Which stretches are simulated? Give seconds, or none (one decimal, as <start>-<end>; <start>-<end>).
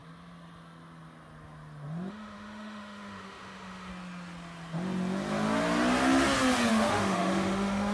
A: 2.1-3.9; 6.7-7.9